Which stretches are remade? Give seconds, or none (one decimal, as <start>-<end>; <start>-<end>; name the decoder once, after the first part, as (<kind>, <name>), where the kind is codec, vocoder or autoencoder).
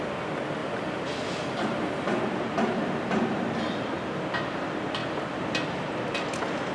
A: 0.6-3.8 (vocoder, BigVGAN v2); 5.0-5.7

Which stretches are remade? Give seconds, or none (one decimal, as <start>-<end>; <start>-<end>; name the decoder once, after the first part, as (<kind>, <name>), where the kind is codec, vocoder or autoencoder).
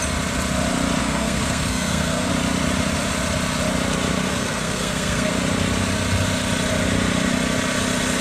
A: 1.0-2.3 (codec, SNAC); 4.3-5.3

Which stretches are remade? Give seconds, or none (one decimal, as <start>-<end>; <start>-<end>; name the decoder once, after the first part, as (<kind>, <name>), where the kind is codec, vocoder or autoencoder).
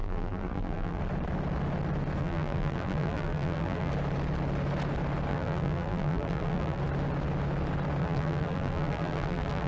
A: 0.0-1.0 (vocoder, BigVGAN v2); 2.2-3.9; 5.3-6.8; 8.0-9.7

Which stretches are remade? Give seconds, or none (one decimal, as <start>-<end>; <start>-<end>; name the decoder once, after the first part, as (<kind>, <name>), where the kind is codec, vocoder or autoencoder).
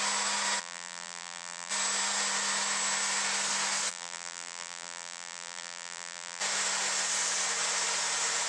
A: 0.6-1.7 (vocoder, BigVGAN v2); 3.9-6.4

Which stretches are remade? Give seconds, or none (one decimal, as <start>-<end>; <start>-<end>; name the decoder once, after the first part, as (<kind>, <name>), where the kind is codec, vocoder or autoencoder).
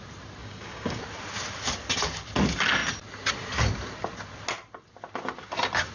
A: 0.4-1.0 (codec, DAC)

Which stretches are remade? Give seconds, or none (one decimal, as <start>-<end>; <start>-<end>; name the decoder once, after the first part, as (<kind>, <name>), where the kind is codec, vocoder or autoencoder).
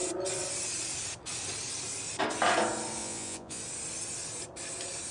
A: 3.0-3.6 (vocoder, Vocos)